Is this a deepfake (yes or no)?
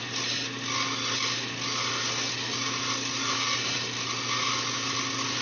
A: no